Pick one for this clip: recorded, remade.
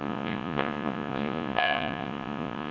remade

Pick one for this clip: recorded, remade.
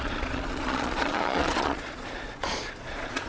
remade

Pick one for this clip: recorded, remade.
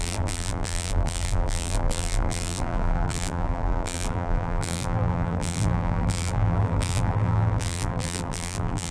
remade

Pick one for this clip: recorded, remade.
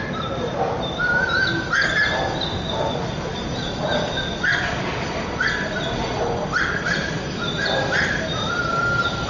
recorded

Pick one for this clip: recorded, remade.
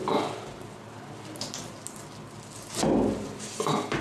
recorded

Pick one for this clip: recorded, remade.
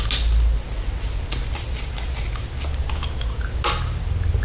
recorded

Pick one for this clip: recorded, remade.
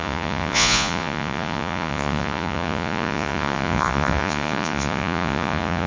remade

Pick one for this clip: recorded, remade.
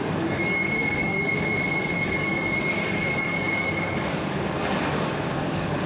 remade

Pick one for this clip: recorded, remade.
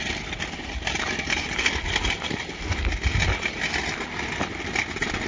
recorded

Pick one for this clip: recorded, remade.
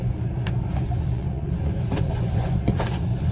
remade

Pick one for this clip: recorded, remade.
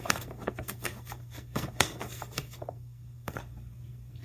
remade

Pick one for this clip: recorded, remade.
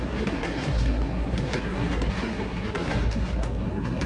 remade